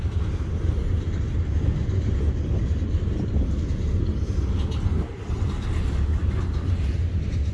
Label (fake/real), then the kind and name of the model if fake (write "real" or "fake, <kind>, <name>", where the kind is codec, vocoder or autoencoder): real